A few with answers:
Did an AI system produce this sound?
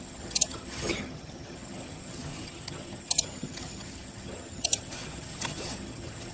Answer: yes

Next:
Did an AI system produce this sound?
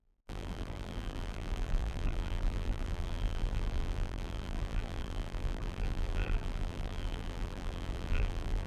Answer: yes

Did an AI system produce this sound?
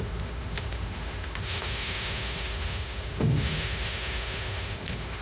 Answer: yes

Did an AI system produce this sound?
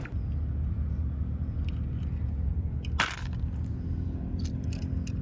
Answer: no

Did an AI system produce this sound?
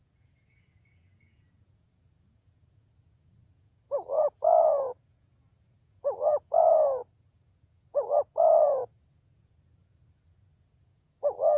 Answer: yes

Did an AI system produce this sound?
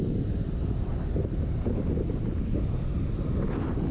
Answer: no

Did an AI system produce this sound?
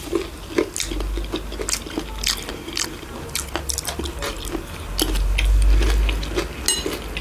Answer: no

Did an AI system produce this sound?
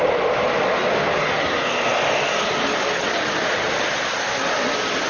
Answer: no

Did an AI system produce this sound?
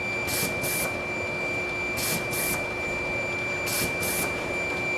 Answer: no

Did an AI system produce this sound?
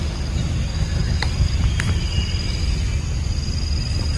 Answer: no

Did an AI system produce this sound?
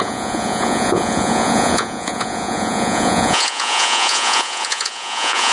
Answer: yes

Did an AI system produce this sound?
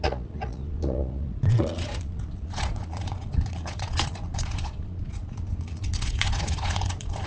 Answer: yes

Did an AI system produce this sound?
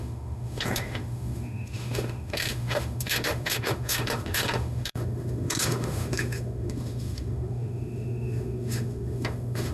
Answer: yes